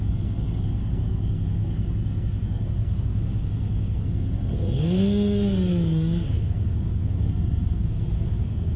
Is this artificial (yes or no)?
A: yes